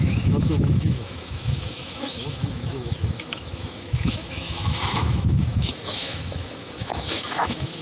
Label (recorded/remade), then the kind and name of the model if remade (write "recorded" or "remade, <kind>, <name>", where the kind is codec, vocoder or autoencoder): remade, autoencoder, DAC-VAE